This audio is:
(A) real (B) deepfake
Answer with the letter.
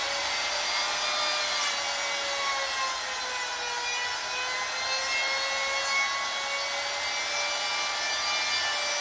A